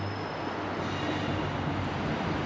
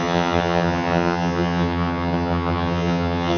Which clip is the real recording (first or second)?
first